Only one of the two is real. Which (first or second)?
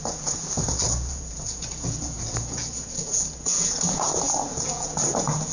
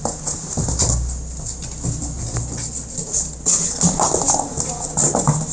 second